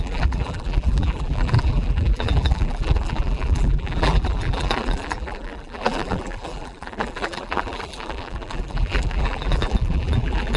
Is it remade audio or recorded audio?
remade